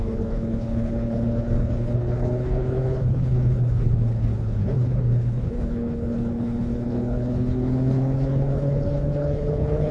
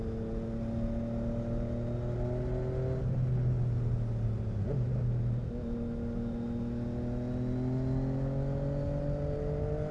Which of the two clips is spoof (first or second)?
first